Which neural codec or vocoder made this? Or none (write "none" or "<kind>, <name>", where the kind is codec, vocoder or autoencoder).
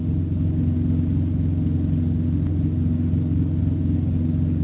none